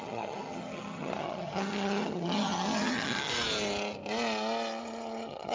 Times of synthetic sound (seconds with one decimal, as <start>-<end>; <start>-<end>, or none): 0.0-3.3; 4.8-5.5